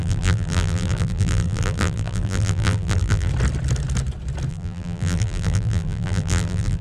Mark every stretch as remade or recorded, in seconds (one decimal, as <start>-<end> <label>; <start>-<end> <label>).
0.0-3.3 remade; 3.3-4.5 recorded; 4.5-6.8 remade